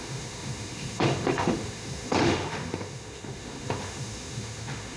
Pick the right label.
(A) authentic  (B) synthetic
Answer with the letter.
B